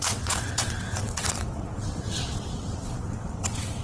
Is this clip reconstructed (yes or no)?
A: yes